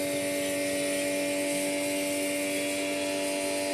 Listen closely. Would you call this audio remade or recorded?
recorded